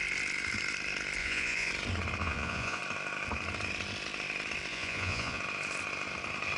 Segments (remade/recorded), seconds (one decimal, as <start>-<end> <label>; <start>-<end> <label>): 0.0-1.2 recorded; 1.2-1.7 remade; 1.7-2.2 recorded; 2.2-2.8 remade; 2.8-4.7 recorded; 4.7-5.4 remade; 5.4-6.6 recorded